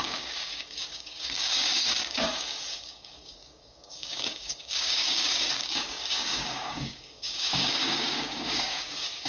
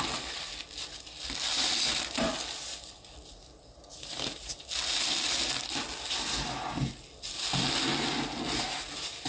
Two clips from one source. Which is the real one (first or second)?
second